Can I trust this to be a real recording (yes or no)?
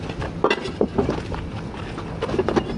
yes